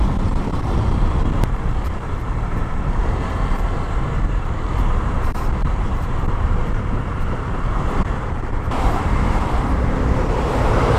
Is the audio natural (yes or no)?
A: no